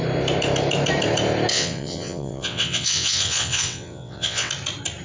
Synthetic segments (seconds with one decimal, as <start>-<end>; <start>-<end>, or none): 1.5-4.5

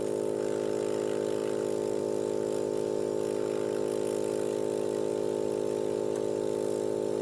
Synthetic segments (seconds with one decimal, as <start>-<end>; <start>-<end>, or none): none

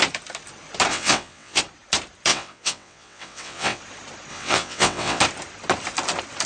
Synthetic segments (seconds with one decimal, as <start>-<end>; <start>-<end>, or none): 0.9-1.6; 2.3-3.8; 4.3-5.2

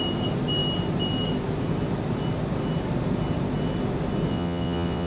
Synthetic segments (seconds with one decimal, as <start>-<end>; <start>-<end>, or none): 4.3-5.1